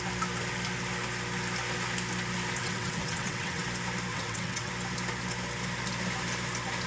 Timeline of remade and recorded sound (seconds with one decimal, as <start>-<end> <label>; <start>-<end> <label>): 0.0-2.6 recorded; 2.6-3.6 remade; 3.6-4.1 recorded; 4.1-4.7 remade; 4.7-6.9 recorded